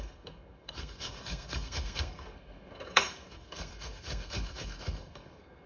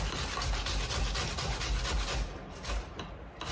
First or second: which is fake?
first